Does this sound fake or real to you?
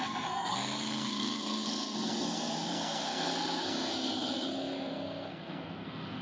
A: fake